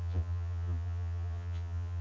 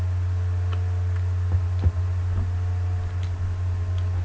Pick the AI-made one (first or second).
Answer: first